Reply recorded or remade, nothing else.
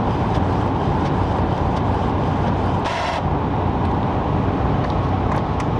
remade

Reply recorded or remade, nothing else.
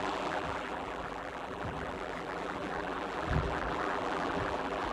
remade